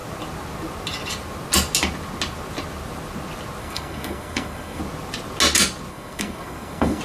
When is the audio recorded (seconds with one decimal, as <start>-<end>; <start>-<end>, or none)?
0.0-3.6; 4.8-5.9